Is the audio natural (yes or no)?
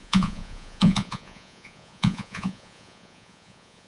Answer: no